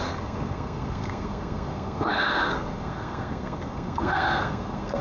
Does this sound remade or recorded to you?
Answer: remade